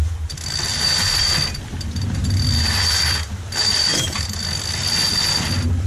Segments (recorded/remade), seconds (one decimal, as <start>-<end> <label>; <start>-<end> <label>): 0.0-3.9 recorded; 3.9-4.4 remade; 4.4-5.9 recorded